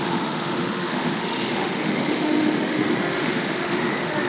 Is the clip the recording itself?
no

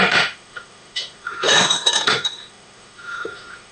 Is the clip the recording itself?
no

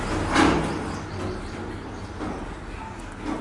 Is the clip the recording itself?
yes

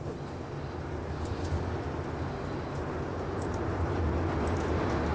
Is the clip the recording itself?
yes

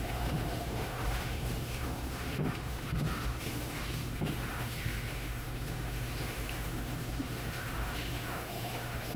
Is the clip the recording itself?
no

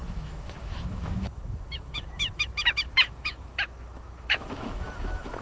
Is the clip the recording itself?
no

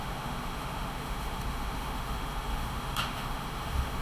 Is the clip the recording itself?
no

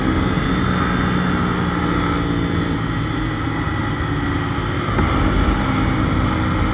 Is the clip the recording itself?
yes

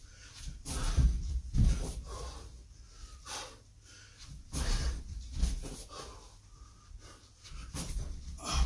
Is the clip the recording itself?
yes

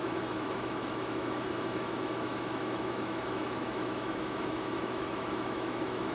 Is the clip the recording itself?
no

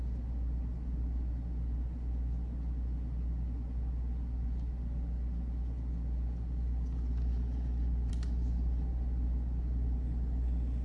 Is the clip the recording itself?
yes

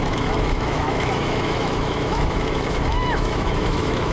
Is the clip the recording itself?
no